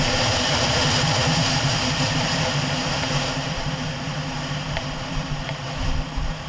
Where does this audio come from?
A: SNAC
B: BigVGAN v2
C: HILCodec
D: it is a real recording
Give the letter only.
B